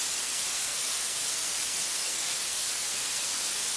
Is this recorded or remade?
remade